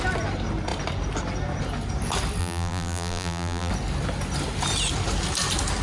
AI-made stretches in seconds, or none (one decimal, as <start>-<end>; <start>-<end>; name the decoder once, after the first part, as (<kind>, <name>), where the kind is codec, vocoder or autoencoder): 2.4-3.7 (vocoder, BigVGAN v2)